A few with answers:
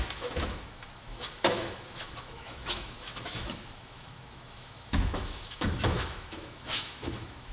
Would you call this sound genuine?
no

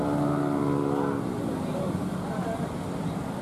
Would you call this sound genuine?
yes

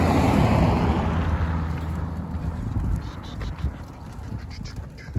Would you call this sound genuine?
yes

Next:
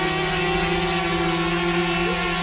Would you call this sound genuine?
yes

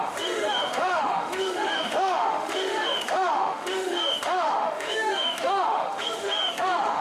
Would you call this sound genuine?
no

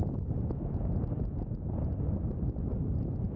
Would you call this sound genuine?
yes